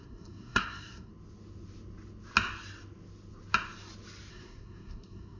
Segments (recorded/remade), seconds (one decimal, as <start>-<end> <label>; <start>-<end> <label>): 0.0-1.1 remade; 1.1-4.3 recorded; 4.3-5.4 remade